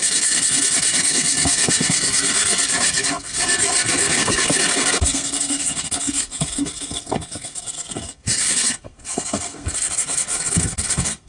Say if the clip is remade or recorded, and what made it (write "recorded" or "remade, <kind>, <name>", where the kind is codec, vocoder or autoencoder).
remade, codec, SNAC